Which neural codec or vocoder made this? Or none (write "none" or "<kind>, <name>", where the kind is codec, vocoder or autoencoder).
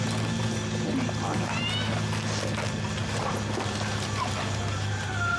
none